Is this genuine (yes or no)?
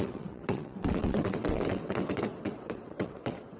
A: no